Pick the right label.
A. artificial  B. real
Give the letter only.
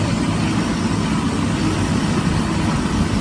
B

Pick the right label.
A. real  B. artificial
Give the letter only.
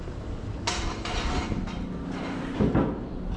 A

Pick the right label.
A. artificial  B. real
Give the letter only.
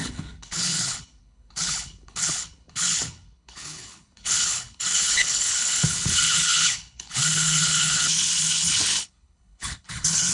A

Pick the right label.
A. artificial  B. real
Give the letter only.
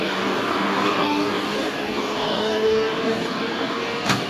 A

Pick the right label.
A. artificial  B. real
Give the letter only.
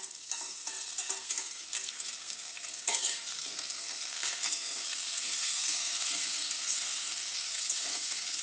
A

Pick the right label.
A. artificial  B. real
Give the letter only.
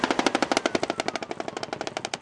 B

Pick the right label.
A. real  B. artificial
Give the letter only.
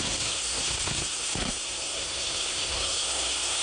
B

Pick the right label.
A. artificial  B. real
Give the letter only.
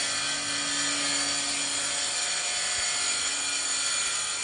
B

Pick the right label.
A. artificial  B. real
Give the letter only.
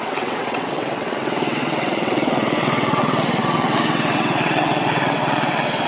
A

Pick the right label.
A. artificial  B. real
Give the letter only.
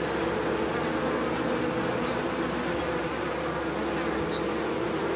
B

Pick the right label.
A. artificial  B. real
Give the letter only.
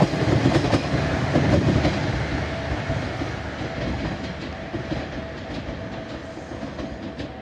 B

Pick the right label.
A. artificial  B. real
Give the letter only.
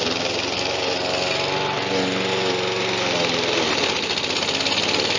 B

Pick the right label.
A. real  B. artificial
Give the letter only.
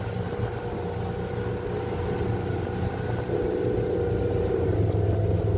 A